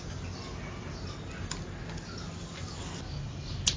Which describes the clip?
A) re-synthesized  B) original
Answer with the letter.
B